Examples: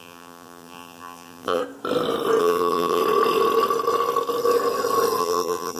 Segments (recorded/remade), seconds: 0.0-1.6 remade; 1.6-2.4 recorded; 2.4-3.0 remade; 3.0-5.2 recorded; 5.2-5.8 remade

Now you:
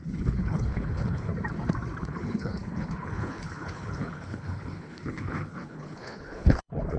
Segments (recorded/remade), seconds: 0.0-1.3 remade; 1.3-2.0 recorded; 2.0-7.0 remade